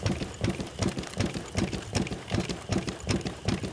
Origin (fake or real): fake